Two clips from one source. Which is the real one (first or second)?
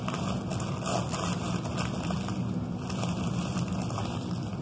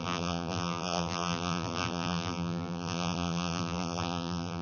first